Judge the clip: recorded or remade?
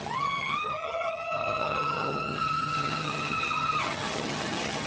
remade